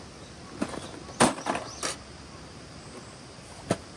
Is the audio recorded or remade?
recorded